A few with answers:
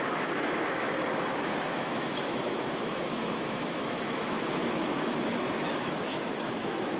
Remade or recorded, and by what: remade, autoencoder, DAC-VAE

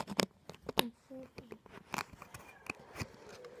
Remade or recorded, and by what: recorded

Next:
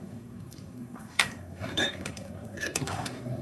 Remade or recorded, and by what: remade, codec, SNAC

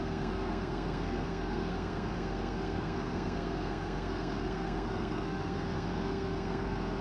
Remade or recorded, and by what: remade, codec, SNAC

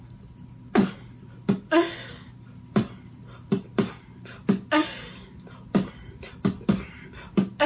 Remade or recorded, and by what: recorded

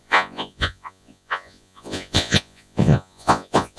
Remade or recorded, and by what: remade, vocoder, Vocos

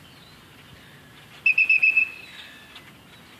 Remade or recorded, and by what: recorded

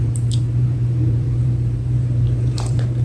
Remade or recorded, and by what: remade, vocoder, BigVGAN v2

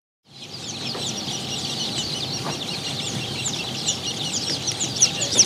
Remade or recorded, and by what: remade, vocoder, BigVGAN v2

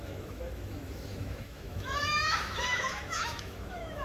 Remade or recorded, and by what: remade, autoencoder, DAC-VAE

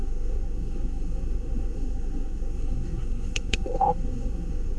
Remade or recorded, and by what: remade, codec, SNAC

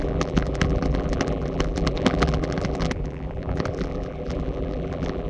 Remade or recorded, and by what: remade, vocoder, BigVGAN v2